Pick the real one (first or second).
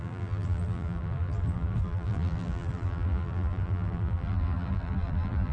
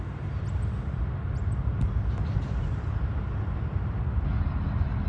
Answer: second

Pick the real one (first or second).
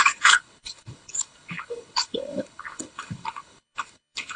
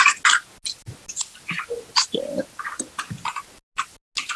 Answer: second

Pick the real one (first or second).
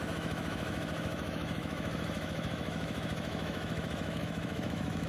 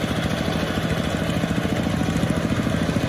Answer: second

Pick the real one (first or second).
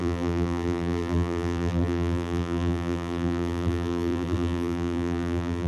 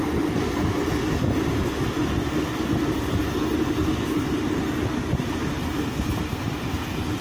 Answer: second